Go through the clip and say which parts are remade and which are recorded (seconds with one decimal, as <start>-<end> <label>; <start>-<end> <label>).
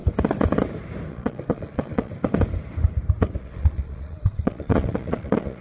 0.0-1.1 recorded; 1.1-2.1 remade; 2.1-3.4 recorded; 3.4-5.6 remade